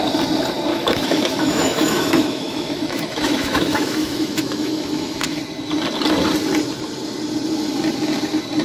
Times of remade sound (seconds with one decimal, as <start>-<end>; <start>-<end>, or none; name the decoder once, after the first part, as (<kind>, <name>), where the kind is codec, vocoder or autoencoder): 0.7-5.4 (autoencoder, DAC-VAE)